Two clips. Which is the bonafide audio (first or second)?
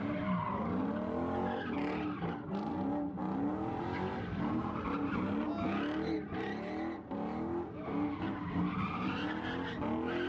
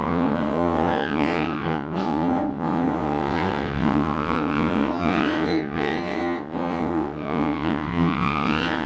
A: first